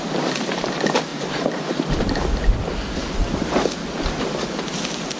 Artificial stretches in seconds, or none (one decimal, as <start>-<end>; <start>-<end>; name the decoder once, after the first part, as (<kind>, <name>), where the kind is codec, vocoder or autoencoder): none